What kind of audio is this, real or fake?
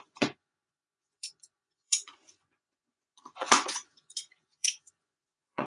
fake